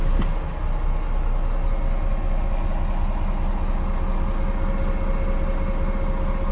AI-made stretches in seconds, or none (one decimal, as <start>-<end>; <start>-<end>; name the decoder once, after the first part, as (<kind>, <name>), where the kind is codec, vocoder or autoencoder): none